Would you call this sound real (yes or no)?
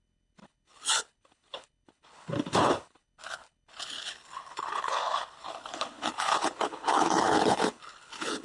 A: no